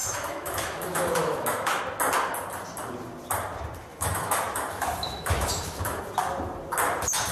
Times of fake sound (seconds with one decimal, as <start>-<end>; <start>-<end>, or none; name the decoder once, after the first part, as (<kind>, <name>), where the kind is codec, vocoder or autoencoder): 0.0-1.8 (autoencoder, DAC-VAE); 3.9-6.0